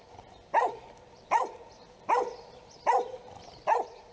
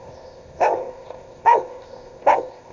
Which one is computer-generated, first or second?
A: second